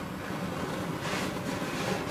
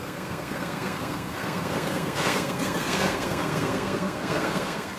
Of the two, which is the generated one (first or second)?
second